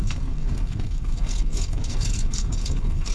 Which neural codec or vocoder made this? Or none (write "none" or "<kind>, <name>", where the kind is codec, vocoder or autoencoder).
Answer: codec, SNAC